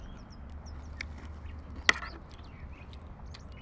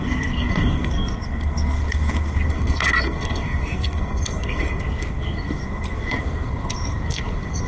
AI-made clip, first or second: second